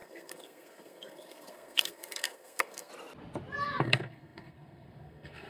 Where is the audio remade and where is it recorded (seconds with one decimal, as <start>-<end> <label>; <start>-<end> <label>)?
0.0-2.9 remade; 2.9-3.8 recorded; 3.8-5.5 remade